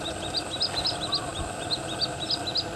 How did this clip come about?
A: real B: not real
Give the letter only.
A